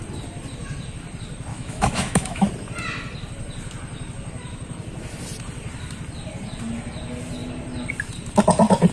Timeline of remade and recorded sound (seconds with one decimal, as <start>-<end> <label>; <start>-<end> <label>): 0.0-1.5 recorded; 1.5-2.5 remade; 2.5-8.9 recorded